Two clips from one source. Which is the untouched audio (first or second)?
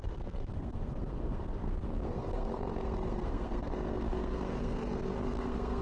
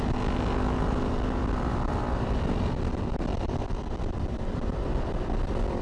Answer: second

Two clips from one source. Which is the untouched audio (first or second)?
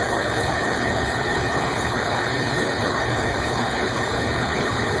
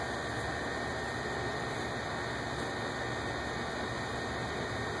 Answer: second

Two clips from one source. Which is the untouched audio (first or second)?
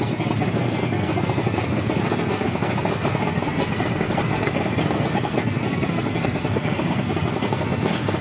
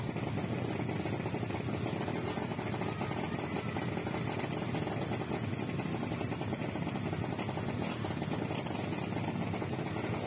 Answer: second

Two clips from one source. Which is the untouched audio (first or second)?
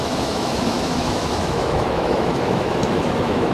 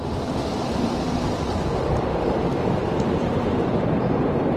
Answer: second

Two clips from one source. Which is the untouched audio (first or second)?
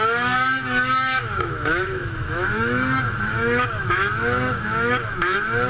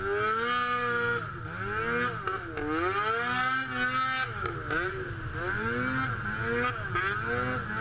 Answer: second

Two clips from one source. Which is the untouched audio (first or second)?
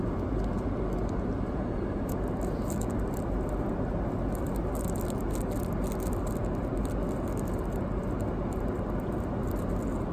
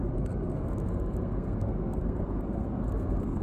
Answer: first